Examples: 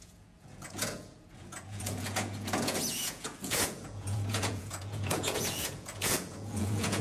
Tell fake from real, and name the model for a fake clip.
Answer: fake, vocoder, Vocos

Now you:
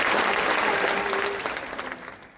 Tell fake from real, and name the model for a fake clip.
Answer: real